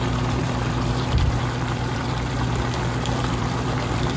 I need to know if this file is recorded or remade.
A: remade